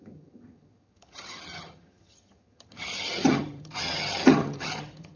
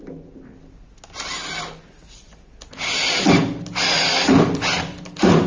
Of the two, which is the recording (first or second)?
second